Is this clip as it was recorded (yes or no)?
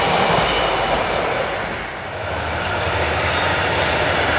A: yes